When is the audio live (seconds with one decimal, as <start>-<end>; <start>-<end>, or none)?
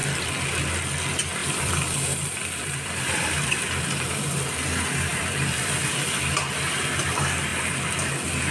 0.7-1.4; 4.2-5.1; 6.3-7.5; 8.1-8.5